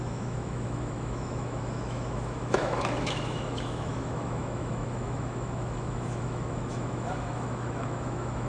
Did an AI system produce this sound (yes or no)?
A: yes